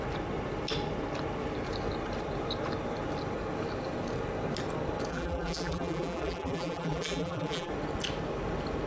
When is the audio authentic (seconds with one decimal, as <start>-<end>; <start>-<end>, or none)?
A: 0.0-5.1; 7.7-8.9